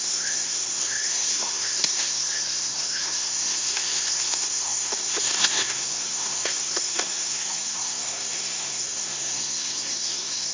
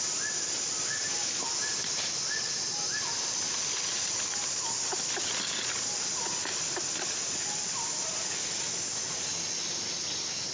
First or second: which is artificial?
first